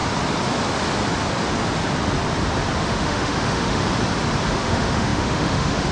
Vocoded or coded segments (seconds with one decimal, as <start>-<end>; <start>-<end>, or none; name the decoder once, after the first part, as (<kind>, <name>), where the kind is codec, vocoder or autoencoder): 2.8-3.8 (autoencoder, DAC-VAE); 4.5-5.9